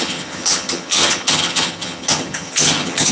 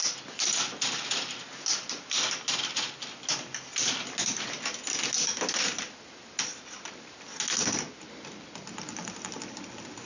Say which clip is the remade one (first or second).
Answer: first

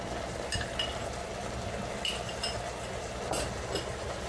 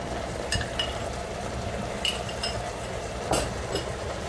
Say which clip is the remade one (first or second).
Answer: second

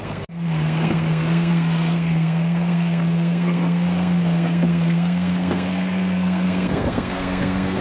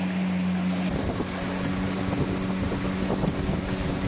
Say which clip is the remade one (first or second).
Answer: first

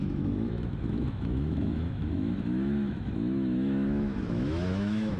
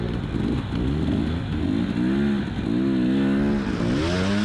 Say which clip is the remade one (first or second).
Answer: first